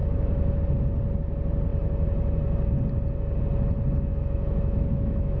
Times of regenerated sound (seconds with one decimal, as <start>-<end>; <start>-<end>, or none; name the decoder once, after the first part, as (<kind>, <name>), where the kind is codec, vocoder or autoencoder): 0.0-0.6 (autoencoder, DAC-VAE); 4.1-5.4